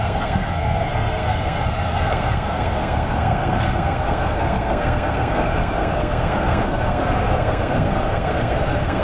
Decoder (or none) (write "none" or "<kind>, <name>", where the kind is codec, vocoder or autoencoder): codec, SNAC